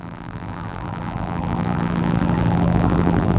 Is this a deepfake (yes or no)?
yes